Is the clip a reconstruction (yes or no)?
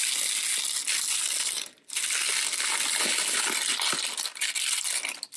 no